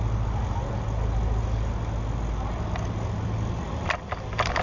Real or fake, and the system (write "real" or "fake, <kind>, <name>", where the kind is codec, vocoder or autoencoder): real